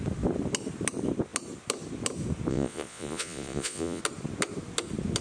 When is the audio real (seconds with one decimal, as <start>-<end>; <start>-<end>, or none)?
0.0-2.5; 4.0-5.2